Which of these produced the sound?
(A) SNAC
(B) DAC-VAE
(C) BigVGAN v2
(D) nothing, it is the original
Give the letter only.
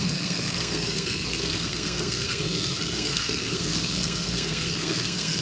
A